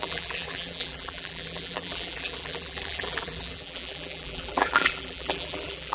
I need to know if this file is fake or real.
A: fake